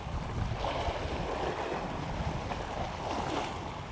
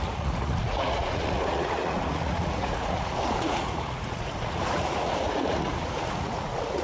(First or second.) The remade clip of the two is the second